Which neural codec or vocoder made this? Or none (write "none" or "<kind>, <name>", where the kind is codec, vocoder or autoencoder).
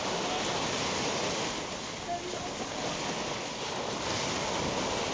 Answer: none